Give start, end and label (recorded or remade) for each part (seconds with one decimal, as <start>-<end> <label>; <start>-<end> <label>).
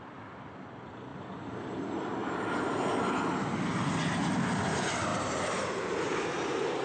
0.0-6.8 recorded